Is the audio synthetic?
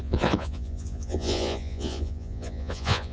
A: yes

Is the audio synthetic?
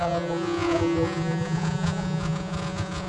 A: yes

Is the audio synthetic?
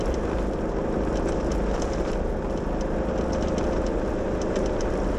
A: no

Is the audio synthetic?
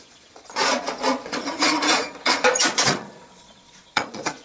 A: yes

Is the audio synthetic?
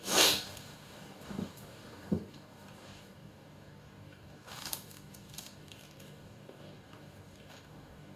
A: yes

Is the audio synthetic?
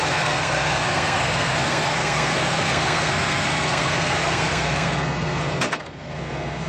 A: yes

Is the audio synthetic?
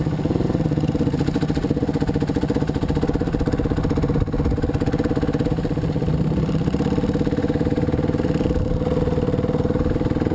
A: no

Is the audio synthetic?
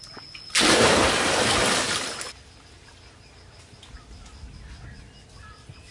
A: no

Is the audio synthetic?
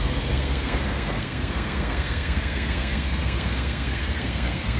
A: yes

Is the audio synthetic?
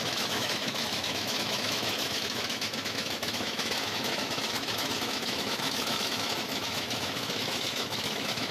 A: yes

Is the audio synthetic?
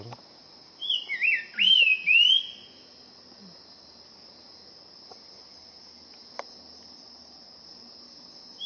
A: no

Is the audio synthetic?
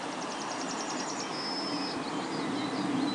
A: no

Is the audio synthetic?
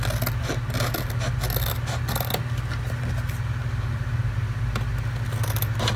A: no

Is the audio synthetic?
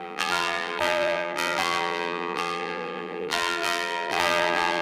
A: yes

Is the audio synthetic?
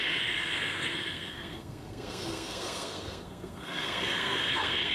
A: yes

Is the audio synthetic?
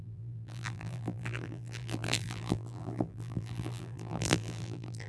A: yes